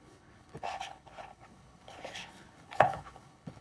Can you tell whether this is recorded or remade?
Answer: remade